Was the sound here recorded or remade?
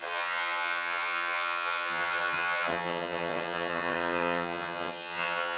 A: remade